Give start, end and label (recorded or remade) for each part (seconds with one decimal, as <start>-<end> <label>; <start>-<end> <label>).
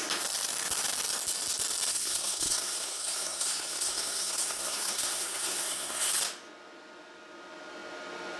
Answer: 0.0-1.9 recorded; 1.9-6.1 remade; 6.1-8.4 recorded